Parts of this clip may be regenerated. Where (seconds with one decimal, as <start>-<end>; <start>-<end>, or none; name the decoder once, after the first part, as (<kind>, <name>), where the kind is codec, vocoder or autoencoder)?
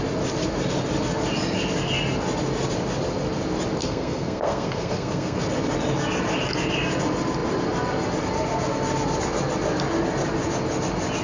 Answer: 3.8-5.4 (codec, SNAC)